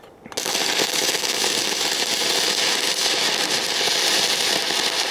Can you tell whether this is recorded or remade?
recorded